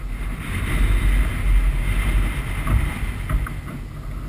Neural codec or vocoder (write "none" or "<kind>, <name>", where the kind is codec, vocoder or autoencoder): none